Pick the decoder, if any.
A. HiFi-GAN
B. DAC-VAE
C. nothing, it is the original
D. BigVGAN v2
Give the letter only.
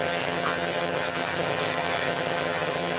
A